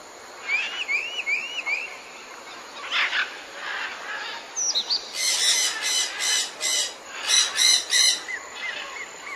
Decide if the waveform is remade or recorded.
recorded